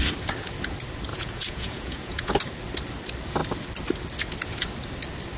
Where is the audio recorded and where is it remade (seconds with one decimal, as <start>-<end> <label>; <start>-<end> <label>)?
0.0-1.1 recorded; 1.1-2.3 remade; 2.3-5.4 recorded